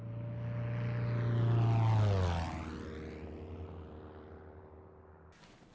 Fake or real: real